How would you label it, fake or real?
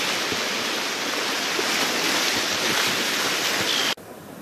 fake